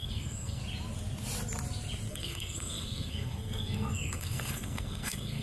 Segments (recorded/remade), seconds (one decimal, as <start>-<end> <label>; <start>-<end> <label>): 0.0-0.6 remade; 0.6-2.1 recorded; 2.1-5.4 remade